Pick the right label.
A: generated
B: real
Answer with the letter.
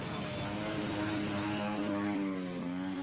B